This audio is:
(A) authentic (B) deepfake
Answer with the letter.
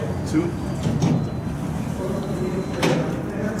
B